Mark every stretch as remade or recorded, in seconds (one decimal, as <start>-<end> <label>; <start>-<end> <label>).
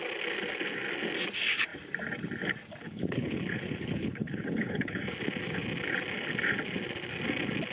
0.0-2.8 recorded; 2.8-5.0 remade; 5.0-7.7 recorded